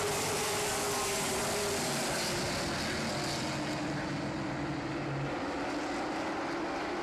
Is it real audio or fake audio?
real